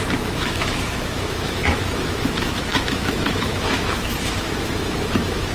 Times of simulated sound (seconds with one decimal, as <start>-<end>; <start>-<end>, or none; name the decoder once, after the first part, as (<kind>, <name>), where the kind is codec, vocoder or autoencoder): 0.0-5.5 (autoencoder, DAC-VAE)